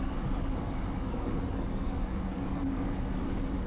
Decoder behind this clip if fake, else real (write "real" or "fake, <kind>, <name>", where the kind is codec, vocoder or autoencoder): fake, codec, DAC